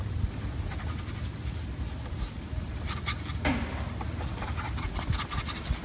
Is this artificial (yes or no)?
no